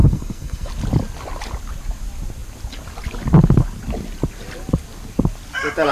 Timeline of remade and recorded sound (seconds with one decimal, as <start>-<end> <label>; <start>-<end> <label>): 0.0-0.7 remade; 0.7-5.9 recorded